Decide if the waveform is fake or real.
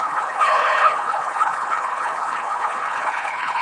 fake